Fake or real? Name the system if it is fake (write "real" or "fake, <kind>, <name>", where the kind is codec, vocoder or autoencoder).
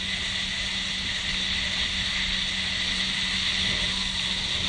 real